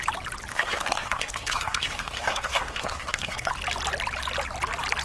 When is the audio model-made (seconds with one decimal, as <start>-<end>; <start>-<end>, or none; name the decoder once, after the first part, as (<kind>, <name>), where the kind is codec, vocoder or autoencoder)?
0.5-3.5 (codec, SNAC)

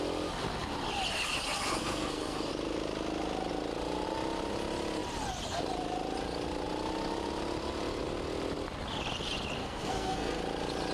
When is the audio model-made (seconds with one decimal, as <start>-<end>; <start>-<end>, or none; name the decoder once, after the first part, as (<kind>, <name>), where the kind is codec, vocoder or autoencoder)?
1.8-2.5 (codec, SNAC); 9.6-10.4

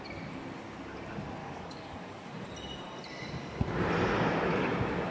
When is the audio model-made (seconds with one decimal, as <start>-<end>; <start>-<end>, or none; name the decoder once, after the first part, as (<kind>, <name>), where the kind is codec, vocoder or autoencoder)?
1.4-2.3 (codec, DAC)

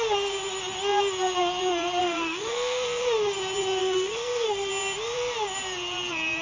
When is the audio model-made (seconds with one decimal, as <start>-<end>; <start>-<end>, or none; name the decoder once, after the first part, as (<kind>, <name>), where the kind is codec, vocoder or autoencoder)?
2.0-3.0 (codec, SNAC); 3.8-4.7

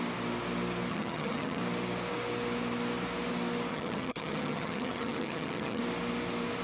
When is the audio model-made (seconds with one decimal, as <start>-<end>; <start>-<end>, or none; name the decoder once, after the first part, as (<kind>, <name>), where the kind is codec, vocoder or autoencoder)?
0.9-1.6 (vocoder, HiFi-GAN); 3.7-5.8

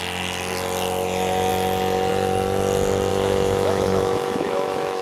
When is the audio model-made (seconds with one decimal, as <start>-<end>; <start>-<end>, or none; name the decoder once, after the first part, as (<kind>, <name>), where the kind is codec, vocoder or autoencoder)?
3.1-5.0 (autoencoder, DAC-VAE)

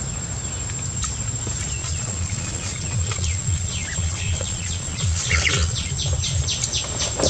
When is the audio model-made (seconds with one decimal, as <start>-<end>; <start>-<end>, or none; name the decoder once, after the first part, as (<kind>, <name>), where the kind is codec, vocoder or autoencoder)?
1.8-5.9 (vocoder, Vocos)

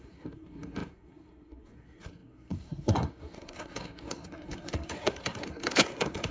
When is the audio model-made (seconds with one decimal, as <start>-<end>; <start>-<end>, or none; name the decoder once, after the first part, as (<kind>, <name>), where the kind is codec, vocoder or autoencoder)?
0.0-6.3 (codec, SNAC)